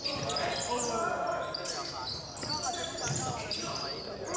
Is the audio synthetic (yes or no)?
no